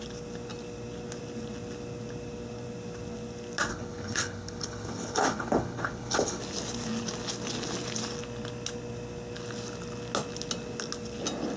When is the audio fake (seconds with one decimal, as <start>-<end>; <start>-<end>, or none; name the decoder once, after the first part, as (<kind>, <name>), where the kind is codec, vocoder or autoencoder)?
3.7-6.4 (codec, HILCodec)